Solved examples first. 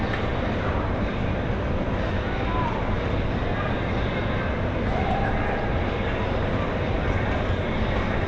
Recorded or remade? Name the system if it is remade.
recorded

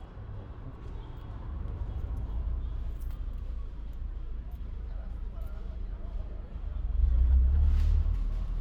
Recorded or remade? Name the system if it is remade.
remade, vocoder, BigVGAN v2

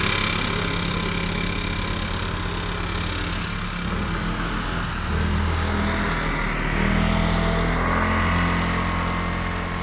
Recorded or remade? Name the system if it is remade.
recorded